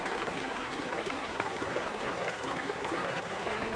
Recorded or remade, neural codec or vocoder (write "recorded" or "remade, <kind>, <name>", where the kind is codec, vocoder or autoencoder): remade, codec, SNAC